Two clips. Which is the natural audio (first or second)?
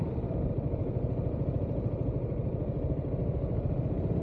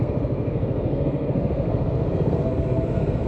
first